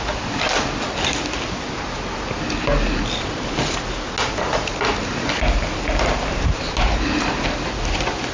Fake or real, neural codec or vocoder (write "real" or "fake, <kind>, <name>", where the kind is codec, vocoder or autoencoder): real